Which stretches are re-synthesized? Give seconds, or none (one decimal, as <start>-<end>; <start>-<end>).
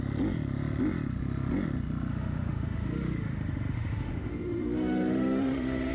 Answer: 2.1-5.9